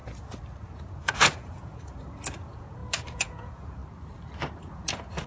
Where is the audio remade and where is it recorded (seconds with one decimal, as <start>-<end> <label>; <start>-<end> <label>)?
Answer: 0.0-0.6 recorded; 0.6-3.8 remade; 3.8-4.6 recorded; 4.6-5.3 remade

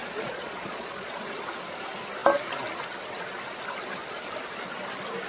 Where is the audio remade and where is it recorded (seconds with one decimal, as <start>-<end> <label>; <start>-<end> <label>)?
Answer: 0.0-1.4 remade; 1.4-5.3 recorded

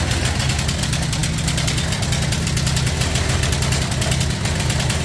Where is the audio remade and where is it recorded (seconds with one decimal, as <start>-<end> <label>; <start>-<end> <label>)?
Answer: 0.0-5.0 recorded

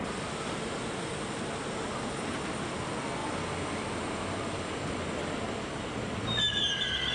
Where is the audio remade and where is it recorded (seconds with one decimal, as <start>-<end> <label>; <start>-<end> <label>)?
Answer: 0.0-7.1 recorded